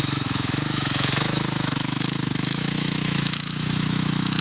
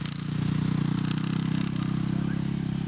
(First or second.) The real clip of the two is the second